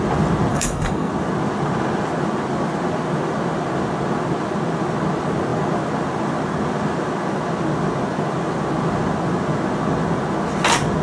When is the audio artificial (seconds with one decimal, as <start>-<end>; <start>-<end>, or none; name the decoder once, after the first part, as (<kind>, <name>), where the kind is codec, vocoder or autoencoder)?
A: 0.5-1.1 (codec, SNAC)